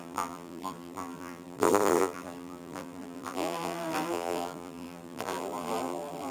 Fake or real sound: fake